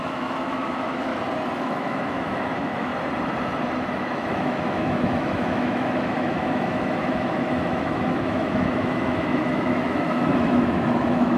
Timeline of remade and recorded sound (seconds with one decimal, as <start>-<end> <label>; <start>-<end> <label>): 0.0-1.1 remade; 1.1-1.6 recorded; 1.6-2.9 remade; 2.9-3.8 recorded; 3.8-11.4 remade